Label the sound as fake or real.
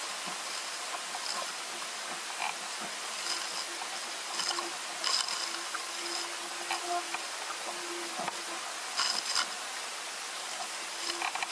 real